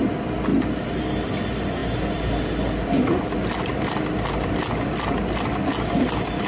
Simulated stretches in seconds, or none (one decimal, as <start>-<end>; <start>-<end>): none